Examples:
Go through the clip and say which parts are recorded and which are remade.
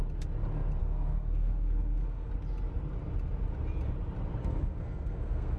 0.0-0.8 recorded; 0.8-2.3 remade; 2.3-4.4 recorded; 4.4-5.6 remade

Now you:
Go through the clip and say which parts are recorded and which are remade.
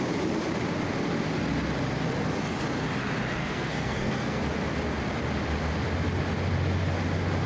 0.0-3.4 recorded; 3.4-4.4 remade; 4.4-7.5 recorded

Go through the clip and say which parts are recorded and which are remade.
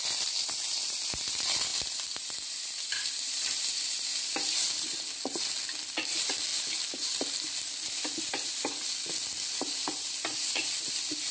0.0-11.3 recorded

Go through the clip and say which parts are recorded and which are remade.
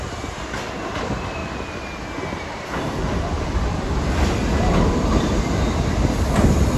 0.0-6.8 recorded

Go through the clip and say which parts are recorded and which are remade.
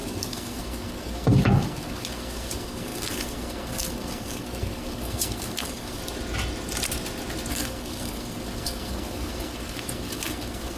0.0-6.0 remade; 6.0-7.5 recorded; 7.5-10.8 remade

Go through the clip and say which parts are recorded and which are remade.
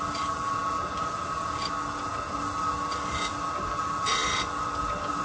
0.0-5.2 recorded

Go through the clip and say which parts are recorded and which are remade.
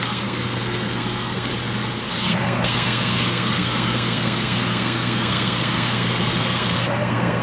0.0-1.5 remade; 1.5-2.1 recorded; 2.1-7.4 remade